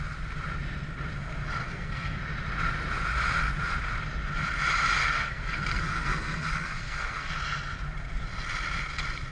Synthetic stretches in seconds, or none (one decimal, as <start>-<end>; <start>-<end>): 1.6-2.2; 5.0-7.3